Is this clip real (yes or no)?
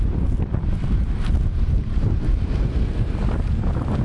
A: yes